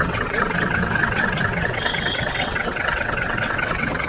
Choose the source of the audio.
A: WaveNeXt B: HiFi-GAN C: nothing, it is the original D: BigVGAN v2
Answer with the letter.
A